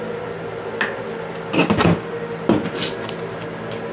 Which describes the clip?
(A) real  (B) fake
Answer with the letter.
A